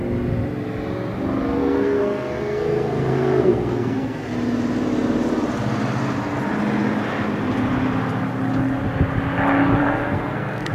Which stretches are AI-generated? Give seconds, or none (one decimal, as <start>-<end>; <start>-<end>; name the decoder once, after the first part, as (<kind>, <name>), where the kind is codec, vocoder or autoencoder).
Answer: 1.6-4.3 (codec, SNAC); 9.8-10.7

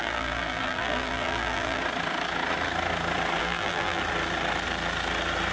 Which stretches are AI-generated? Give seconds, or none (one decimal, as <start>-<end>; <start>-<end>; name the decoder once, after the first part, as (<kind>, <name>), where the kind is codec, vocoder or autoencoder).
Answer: 0.0-1.8 (vocoder, BigVGAN v2); 3.4-4.0

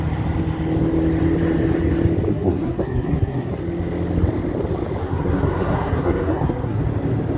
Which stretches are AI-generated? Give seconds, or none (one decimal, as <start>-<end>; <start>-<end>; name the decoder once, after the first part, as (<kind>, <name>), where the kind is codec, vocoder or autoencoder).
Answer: 2.3-3.6 (codec, SNAC); 5.0-6.8

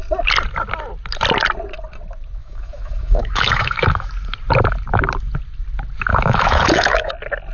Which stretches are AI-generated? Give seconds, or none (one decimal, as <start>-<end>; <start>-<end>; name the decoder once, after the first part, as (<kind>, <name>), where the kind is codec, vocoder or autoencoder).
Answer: 2.4-4.1 (autoencoder, DAC-VAE); 6.1-7.1